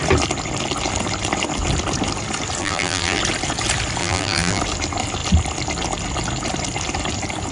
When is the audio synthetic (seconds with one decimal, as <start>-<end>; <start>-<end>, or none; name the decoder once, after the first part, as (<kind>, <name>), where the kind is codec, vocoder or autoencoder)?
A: 2.6-3.2 (vocoder, BigVGAN v2); 4.0-4.6